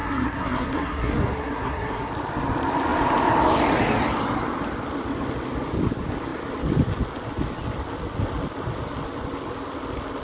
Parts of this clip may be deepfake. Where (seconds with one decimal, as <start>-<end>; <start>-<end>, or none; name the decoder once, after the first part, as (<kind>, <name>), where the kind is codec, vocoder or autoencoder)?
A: 0.0-2.1 (codec, SNAC)